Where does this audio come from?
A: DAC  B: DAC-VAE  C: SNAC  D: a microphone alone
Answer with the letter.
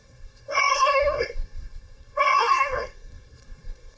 C